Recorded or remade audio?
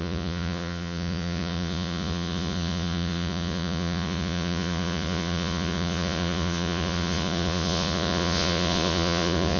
remade